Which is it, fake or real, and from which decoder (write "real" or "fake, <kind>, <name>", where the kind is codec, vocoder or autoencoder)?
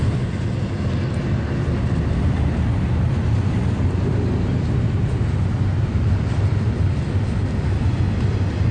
real